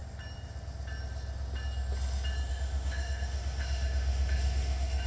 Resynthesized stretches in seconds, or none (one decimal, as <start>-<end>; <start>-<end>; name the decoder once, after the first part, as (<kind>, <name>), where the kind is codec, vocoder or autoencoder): 2.5-5.1 (autoencoder, DAC-VAE)